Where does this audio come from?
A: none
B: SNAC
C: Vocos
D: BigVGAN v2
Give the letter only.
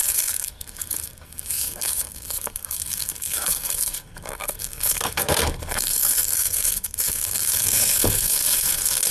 B